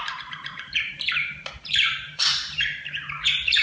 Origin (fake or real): fake